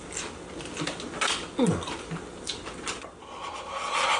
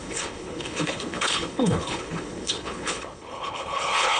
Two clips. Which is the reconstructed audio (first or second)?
second